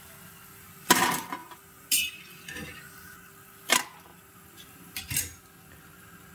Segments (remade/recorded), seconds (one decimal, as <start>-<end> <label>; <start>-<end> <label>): 0.0-1.4 recorded; 1.4-2.2 remade; 2.2-4.1 recorded; 4.1-5.0 remade; 5.0-6.3 recorded